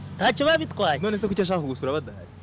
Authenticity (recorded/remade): recorded